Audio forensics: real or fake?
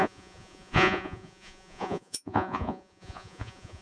fake